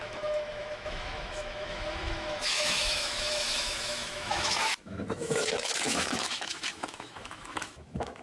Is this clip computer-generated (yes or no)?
yes